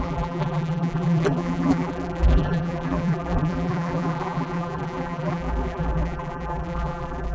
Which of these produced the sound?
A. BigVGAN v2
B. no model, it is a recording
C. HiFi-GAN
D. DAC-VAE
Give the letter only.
A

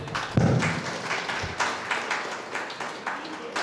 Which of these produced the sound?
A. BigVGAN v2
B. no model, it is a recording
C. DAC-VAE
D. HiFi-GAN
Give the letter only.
B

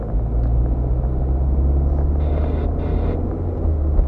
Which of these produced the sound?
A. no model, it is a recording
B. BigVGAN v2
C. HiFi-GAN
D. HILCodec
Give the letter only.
A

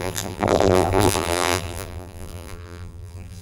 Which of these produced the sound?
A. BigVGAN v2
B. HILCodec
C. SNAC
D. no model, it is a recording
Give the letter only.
A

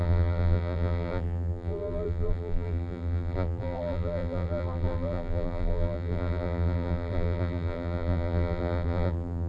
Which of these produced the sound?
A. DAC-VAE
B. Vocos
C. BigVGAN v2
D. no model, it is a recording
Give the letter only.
C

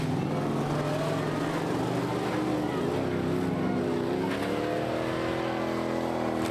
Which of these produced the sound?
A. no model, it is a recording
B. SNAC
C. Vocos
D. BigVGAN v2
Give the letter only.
A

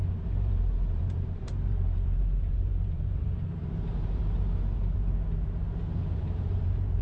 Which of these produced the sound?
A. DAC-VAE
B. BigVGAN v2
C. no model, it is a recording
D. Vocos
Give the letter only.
B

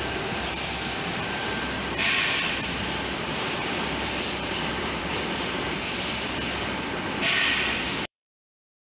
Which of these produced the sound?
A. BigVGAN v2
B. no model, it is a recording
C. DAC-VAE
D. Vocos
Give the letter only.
A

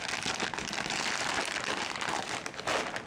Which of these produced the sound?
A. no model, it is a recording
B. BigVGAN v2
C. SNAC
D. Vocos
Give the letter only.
A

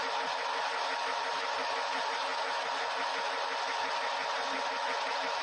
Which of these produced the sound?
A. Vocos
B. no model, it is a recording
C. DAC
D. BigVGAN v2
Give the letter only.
B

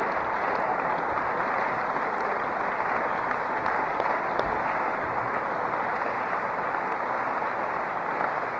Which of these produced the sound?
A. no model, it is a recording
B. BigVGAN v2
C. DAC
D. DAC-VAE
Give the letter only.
A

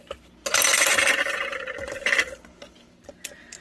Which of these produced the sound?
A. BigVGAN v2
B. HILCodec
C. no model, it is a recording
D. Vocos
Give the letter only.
A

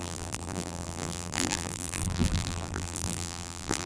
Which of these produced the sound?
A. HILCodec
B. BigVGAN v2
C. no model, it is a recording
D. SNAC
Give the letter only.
B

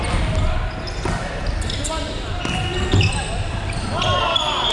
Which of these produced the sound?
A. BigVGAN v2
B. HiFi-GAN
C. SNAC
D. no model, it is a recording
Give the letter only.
D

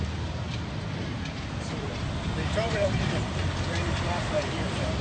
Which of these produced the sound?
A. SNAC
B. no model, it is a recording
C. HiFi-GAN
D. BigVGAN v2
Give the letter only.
D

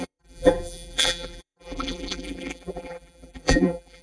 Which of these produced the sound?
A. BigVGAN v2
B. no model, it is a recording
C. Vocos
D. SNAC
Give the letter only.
A